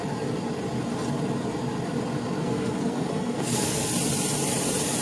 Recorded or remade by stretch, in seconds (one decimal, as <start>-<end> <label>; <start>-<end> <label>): 0.0-2.4 recorded; 2.4-3.9 remade; 3.9-5.0 recorded